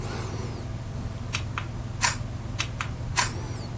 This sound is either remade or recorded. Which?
recorded